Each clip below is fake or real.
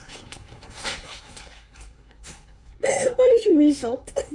fake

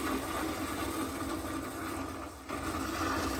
real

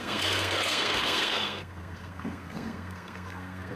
fake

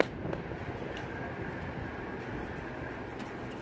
real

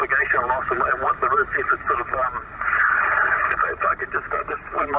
real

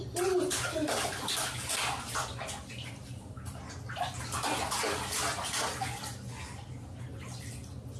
real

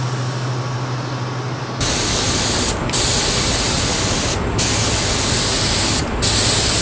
real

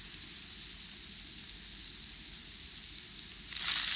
real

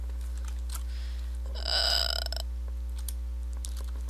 real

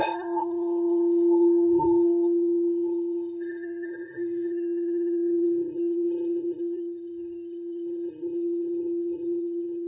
fake